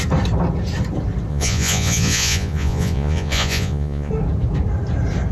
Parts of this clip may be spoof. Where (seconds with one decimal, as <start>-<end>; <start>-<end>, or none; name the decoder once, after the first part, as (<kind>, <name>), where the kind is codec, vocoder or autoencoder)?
1.3-4.1 (vocoder, Vocos)